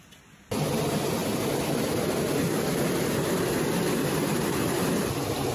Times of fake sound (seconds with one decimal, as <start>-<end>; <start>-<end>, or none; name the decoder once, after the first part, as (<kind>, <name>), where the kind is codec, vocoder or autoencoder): none